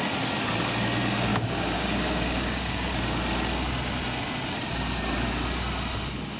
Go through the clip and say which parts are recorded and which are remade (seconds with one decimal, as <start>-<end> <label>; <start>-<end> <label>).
0.0-1.3 recorded; 1.3-2.9 remade; 2.9-6.4 recorded